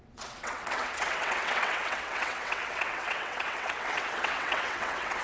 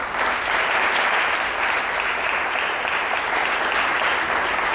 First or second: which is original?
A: second